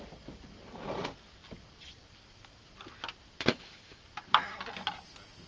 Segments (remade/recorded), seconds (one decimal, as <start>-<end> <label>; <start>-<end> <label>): 0.0-3.5 recorded; 3.5-4.0 remade; 4.0-5.5 recorded